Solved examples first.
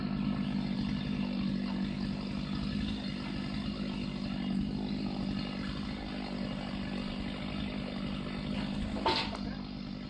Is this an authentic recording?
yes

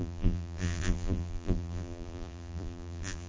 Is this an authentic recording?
no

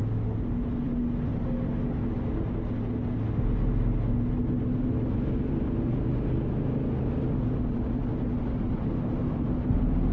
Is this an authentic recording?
yes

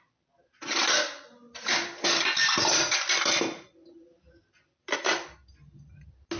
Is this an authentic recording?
yes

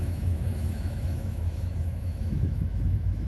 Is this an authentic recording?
no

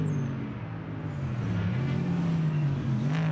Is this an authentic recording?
yes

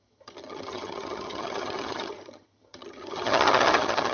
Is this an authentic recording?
no